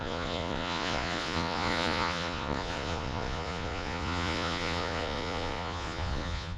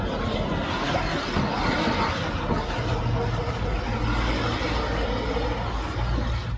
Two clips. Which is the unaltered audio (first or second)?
second